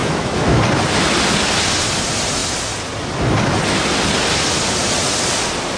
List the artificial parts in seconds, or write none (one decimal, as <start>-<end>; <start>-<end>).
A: 0.0-0.6